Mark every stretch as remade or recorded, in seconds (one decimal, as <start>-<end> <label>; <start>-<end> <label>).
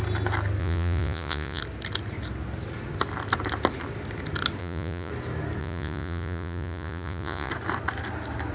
0.0-0.6 recorded; 0.6-1.6 remade; 1.6-4.6 recorded; 4.6-5.1 remade; 5.1-5.6 recorded; 5.6-7.5 remade; 7.5-8.5 recorded